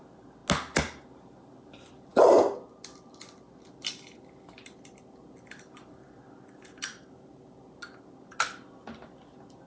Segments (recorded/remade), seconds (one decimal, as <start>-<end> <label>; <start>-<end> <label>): 0.0-9.7 recorded